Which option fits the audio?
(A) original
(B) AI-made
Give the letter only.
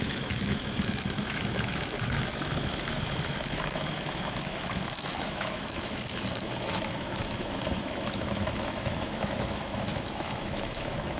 B